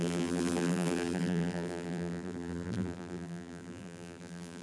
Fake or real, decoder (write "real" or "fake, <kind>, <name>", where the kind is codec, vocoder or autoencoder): fake, vocoder, BigVGAN v2